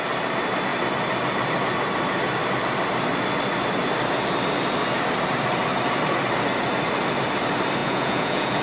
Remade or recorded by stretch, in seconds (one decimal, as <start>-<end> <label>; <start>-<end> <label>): 0.0-7.8 recorded; 7.8-8.6 remade